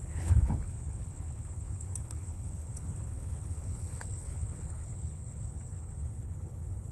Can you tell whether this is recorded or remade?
remade